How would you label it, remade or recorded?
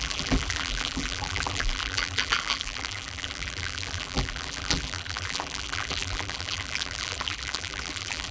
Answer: remade